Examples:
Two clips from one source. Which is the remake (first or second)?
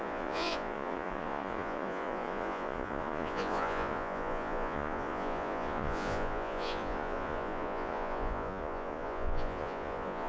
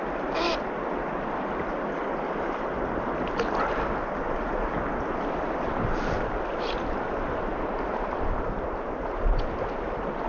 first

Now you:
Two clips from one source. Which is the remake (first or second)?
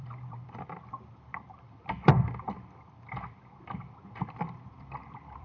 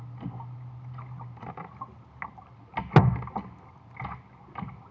first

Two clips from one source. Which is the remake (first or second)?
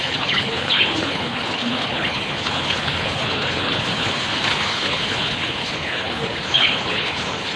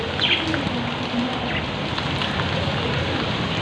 first